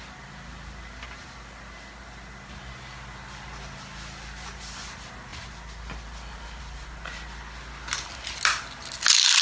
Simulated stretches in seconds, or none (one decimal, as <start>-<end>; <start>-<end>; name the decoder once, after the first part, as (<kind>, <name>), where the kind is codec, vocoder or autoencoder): none